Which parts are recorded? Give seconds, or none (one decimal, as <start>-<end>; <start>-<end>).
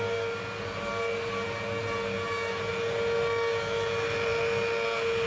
0.0-5.3